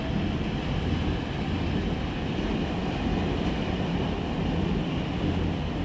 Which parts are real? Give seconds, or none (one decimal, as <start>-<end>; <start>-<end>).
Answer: 0.0-5.8

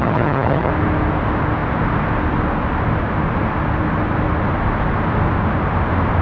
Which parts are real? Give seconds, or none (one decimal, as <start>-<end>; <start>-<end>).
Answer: 0.7-6.2

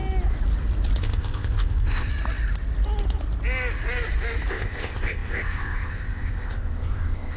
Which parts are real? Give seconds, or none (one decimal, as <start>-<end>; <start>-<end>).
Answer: 0.0-1.0; 2.1-4.5

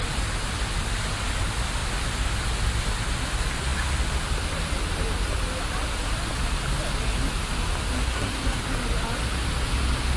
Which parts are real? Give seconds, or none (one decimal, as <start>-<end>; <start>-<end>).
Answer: 0.0-8.0; 8.6-10.2

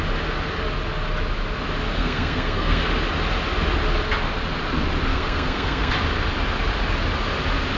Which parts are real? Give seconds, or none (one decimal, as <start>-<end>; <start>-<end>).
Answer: 0.0-1.9; 2.8-5.1; 5.9-7.8